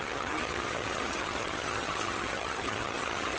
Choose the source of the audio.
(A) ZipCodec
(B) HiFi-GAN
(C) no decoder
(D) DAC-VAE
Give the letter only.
B